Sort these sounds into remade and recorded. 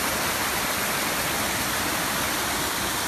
recorded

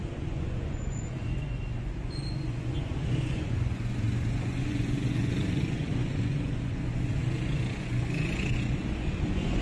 remade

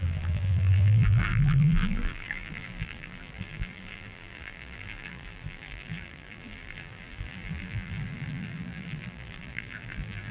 remade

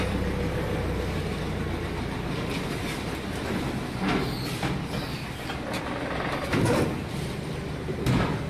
recorded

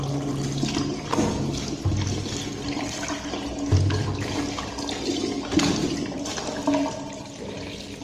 recorded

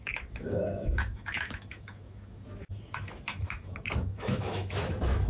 remade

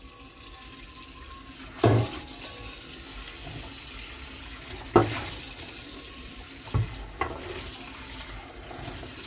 recorded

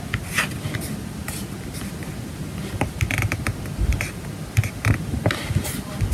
recorded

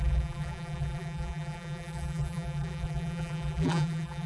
remade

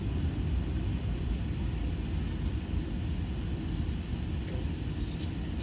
recorded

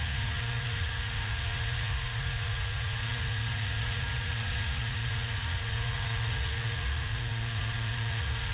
remade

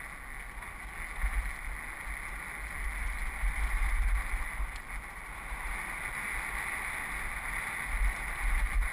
recorded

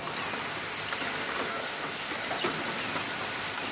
recorded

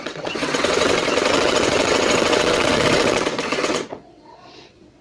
remade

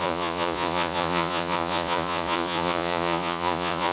remade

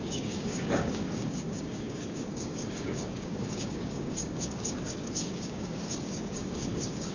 remade